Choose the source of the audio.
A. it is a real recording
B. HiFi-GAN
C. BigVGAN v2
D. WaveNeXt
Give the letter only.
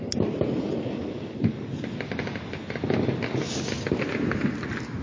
A